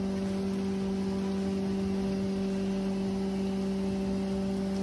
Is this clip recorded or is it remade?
recorded